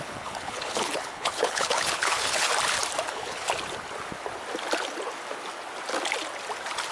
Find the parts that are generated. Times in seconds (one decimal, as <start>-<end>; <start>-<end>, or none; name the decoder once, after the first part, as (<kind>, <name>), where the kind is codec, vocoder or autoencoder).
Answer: 0.0-2.5 (codec, HILCodec); 3.1-3.5

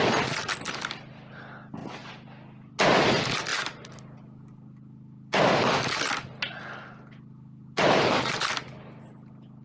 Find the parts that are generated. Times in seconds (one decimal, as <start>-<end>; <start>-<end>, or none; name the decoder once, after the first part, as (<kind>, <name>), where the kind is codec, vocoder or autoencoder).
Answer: none

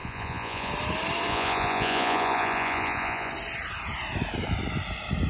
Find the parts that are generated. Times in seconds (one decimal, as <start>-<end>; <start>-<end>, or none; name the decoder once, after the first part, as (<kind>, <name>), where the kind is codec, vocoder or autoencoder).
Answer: 0.0-0.7 (vocoder, Vocos); 1.3-3.3

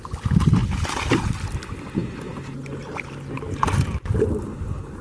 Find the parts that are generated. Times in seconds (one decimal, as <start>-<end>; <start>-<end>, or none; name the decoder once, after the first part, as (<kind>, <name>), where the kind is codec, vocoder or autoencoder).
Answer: none

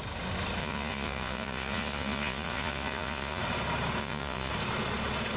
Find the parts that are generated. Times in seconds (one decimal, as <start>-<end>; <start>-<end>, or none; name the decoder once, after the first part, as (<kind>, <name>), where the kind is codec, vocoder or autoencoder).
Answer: 0.6-3.4 (vocoder, Vocos); 4.0-4.5

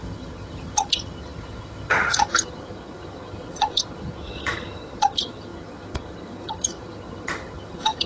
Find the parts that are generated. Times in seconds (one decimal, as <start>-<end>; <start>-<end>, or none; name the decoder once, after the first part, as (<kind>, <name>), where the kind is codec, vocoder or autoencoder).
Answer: 0.0-8.1 (vocoder, HiFi-GAN)